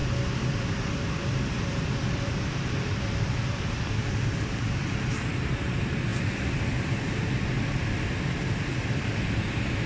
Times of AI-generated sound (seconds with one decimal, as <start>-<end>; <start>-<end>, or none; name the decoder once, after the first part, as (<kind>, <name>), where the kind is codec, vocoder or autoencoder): 0.0-9.9 (vocoder, BigVGAN v2)